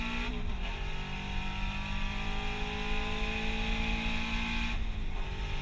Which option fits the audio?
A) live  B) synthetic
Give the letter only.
A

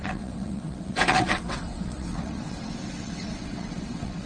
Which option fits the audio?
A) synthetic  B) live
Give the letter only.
A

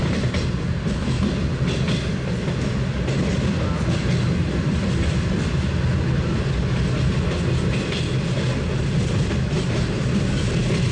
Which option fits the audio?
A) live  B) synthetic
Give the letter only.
A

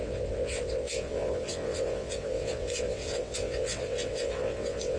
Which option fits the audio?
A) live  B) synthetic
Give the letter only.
B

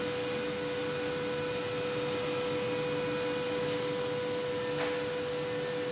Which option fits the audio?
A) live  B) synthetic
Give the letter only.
A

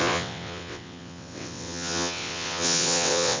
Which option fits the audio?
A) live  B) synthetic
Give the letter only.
B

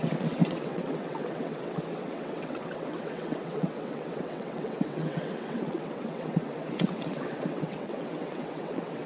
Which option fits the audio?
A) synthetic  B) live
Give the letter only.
A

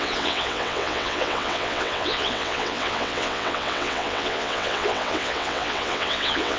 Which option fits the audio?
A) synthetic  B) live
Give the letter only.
A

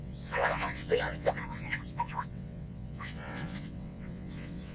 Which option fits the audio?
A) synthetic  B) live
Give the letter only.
A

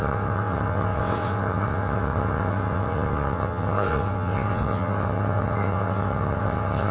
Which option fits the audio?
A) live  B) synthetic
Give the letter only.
B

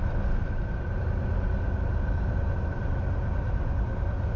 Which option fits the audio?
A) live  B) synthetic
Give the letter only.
A